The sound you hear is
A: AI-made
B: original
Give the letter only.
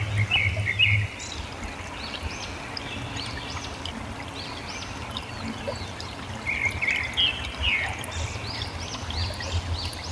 B